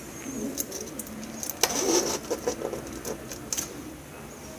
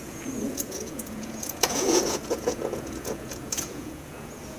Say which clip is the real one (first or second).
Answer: first